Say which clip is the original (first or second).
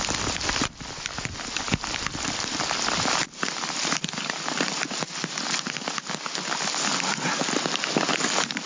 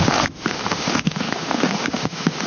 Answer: first